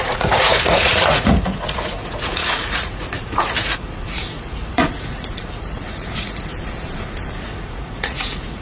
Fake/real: fake